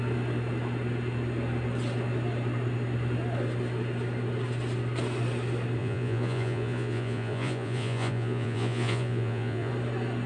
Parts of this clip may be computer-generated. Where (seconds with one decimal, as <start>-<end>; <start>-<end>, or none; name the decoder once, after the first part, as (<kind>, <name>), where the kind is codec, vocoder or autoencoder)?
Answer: 5.8-9.7 (vocoder, Vocos)